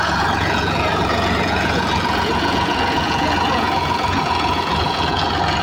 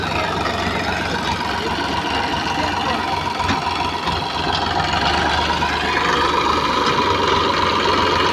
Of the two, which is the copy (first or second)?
first